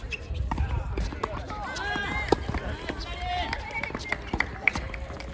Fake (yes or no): no